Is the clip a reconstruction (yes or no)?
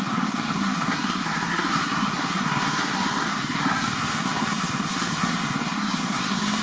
yes